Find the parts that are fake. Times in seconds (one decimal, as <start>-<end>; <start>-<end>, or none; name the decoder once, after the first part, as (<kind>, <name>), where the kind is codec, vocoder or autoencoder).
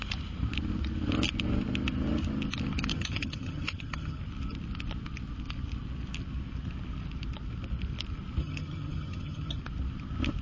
2.9-4.2 (vocoder, HiFi-GAN); 8.4-9.6